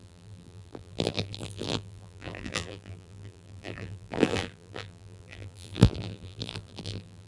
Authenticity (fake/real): fake